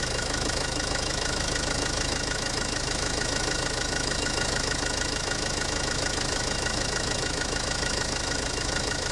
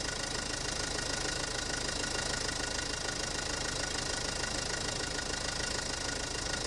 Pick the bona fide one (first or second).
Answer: second